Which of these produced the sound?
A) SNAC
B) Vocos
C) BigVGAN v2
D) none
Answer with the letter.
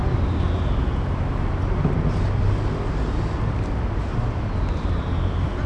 D